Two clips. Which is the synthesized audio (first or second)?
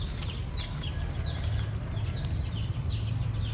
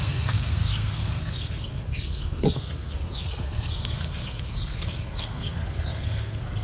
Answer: second